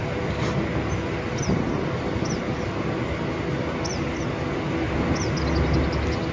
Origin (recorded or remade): recorded